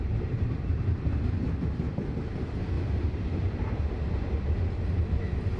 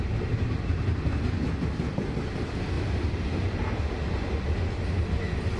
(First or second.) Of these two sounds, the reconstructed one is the first